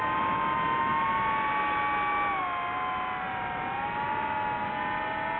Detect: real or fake real